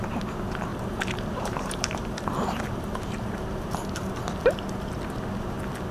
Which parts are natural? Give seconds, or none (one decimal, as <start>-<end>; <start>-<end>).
0.0-0.7; 4.2-5.9